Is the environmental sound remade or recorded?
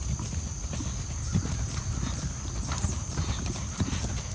recorded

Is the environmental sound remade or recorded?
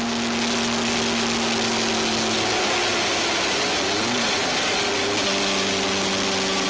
recorded